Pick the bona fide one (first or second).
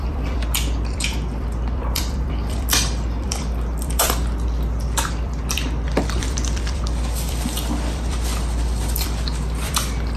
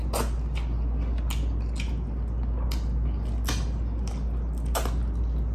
second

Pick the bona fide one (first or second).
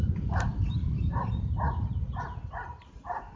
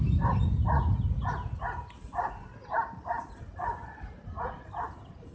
second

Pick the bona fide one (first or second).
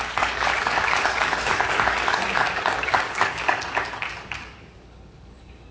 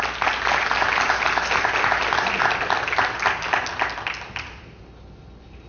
second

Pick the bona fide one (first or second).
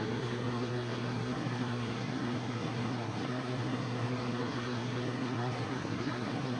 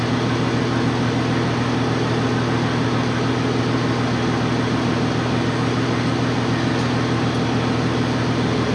second